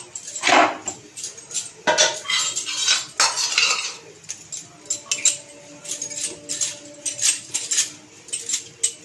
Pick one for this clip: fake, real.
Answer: real